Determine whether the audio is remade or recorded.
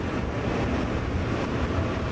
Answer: recorded